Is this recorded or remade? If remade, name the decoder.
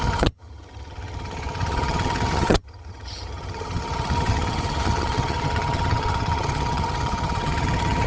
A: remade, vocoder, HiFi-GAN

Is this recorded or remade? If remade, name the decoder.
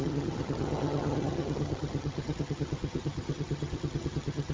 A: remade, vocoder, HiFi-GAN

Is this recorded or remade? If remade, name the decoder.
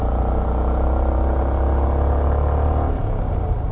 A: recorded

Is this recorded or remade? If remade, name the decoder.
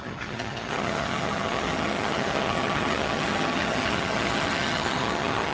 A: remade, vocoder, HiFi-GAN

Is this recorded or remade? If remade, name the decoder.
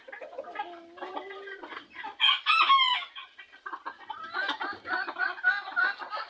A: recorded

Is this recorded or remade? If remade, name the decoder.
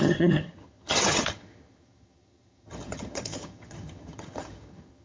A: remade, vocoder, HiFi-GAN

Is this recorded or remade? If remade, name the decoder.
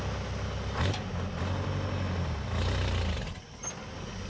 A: recorded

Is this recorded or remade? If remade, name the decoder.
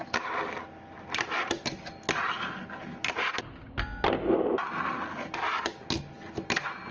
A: recorded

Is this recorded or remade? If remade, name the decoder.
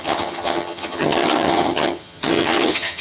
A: remade, vocoder, HiFi-GAN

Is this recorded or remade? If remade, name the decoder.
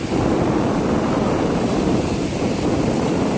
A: recorded